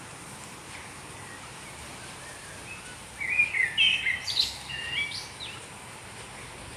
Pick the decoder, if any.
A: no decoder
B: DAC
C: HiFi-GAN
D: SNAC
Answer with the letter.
A